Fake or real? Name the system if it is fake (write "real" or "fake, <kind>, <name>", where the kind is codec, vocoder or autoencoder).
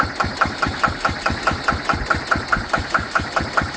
real